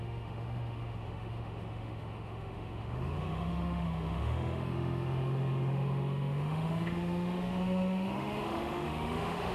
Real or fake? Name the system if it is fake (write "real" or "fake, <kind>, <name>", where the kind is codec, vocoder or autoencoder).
fake, autoencoder, DAC-VAE